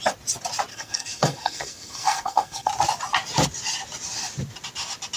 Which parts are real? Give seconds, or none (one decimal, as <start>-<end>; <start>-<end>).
0.0-0.7; 2.7-5.2